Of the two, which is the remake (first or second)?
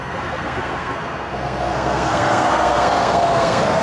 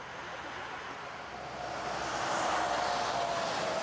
first